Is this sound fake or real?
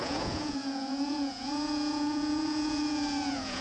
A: fake